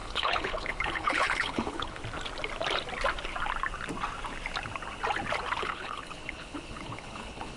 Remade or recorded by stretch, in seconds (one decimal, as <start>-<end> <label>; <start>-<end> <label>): 0.0-2.0 remade; 2.0-5.6 recorded; 5.6-7.6 remade